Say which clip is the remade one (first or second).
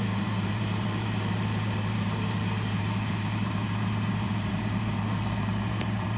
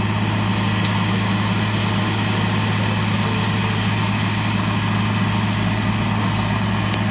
first